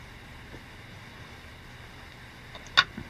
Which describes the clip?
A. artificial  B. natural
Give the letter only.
B